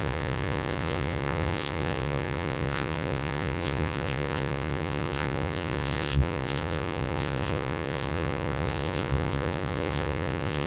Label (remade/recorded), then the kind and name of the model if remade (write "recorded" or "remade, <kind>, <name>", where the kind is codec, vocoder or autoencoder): remade, vocoder, Vocos